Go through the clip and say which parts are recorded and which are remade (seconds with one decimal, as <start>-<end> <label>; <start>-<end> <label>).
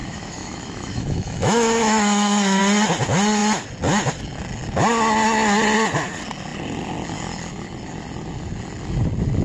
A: 0.0-2.6 remade; 2.6-9.4 recorded